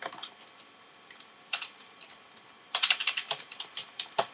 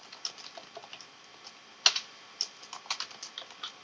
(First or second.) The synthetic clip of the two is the first